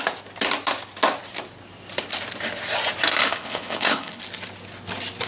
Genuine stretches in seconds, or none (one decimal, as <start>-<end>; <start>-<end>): 0.0-3.2; 4.2-5.3